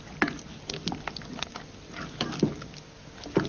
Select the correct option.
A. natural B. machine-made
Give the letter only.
A